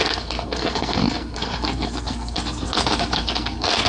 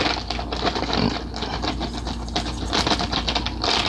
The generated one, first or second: first